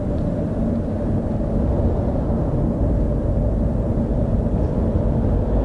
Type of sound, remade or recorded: recorded